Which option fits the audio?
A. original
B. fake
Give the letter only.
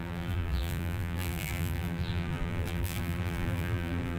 B